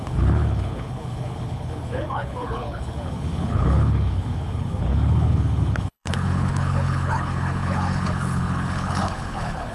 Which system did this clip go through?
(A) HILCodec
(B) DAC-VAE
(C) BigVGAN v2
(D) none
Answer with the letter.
A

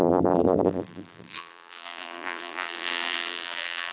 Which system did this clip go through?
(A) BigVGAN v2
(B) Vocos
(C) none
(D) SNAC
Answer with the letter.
A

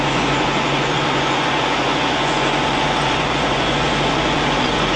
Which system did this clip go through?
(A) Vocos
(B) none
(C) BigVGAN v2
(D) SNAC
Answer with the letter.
A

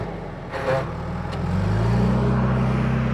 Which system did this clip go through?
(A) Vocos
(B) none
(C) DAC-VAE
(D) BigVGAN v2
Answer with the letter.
B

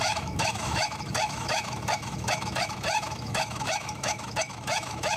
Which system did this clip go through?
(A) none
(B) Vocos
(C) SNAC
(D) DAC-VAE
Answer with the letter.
D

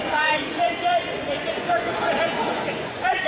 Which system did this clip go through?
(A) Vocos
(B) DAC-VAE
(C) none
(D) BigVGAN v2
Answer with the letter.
A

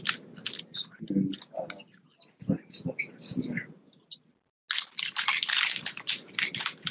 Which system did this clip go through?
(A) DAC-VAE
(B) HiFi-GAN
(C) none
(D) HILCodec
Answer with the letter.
C